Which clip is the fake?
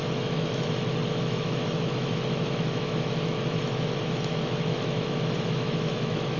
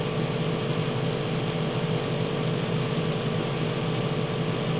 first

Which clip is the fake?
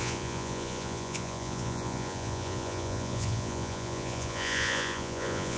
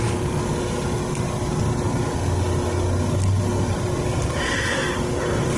first